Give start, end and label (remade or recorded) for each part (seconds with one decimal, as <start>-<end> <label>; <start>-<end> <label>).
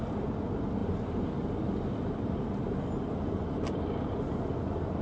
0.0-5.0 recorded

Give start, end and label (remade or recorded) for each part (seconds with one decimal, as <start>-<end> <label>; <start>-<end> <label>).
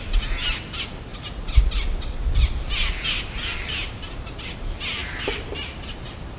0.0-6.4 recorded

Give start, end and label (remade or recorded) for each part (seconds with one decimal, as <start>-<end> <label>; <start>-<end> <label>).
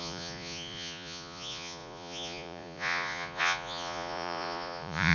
0.0-5.1 remade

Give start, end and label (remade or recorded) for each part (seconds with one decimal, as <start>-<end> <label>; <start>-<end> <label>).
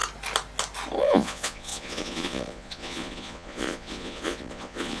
0.0-1.0 recorded; 1.0-5.0 remade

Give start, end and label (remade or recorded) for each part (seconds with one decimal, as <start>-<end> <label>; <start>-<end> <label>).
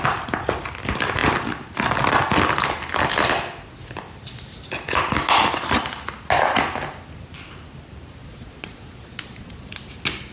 0.0-8.2 recorded; 8.2-9.6 remade; 9.6-10.3 recorded